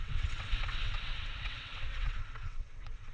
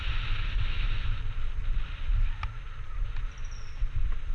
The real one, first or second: second